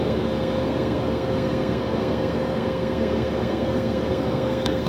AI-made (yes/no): yes